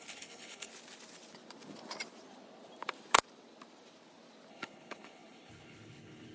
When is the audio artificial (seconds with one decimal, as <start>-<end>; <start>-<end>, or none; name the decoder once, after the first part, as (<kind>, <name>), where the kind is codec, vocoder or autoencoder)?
0.0-0.7 (codec, HILCodec); 4.5-6.3